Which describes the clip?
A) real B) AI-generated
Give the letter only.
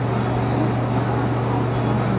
A